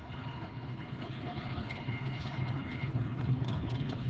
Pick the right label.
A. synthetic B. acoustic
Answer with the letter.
A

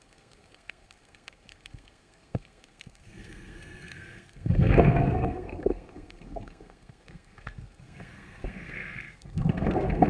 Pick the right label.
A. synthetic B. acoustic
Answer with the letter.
A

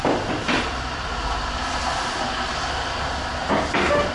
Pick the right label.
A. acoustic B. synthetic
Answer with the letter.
B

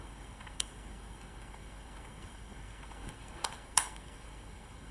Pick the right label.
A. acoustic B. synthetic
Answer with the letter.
B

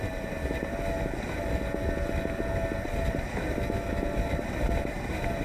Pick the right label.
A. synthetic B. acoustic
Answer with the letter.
B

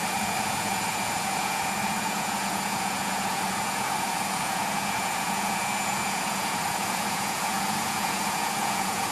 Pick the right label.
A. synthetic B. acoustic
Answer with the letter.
A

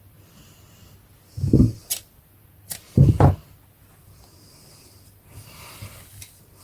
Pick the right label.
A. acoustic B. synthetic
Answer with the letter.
A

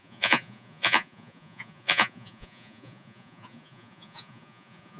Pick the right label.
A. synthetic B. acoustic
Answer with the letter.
A